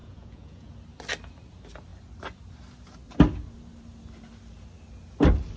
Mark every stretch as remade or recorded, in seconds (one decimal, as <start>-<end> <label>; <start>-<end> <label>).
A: 0.0-0.7 remade; 0.7-5.6 recorded